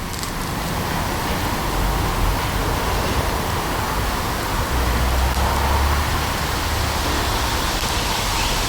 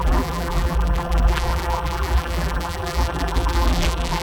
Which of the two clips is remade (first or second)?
second